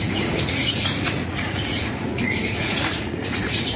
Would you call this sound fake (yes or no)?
yes